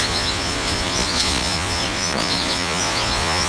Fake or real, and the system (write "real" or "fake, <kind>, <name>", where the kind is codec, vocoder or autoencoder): fake, vocoder, Vocos